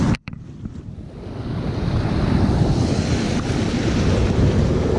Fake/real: fake